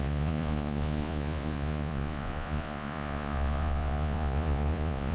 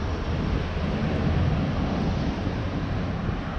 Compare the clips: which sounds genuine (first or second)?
second